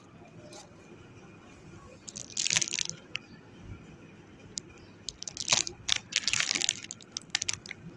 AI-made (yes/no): no